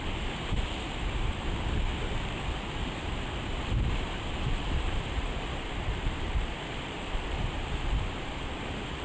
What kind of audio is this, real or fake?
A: fake